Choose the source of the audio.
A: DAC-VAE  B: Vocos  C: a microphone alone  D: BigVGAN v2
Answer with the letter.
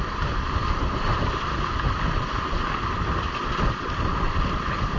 C